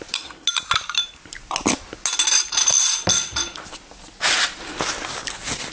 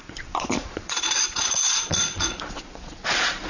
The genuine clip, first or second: first